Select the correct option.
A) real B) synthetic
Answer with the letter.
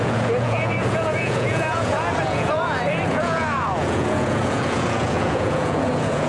B